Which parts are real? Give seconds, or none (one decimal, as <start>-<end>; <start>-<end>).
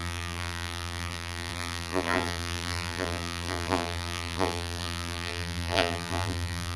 none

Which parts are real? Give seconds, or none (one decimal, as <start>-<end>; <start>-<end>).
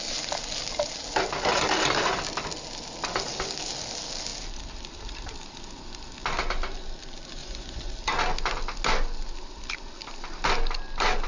0.0-7.4; 7.9-11.3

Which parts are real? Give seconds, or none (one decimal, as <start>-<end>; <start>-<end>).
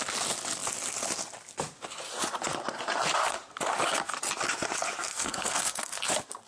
0.0-5.1; 6.1-6.5